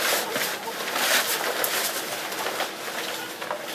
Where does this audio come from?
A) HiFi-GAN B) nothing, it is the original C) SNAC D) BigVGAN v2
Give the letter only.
B